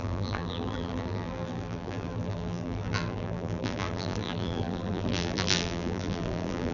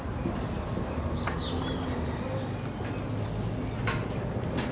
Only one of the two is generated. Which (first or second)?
first